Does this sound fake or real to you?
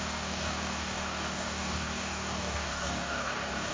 fake